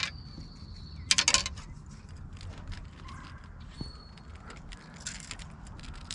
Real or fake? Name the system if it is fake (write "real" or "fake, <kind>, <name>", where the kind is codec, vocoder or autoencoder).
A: real